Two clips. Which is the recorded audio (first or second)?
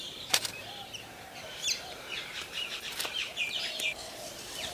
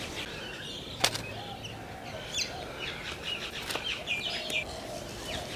second